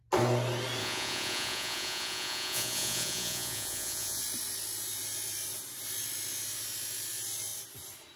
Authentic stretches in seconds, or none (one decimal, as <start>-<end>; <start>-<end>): 0.0-0.8; 4.2-8.2